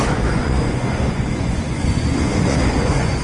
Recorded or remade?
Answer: remade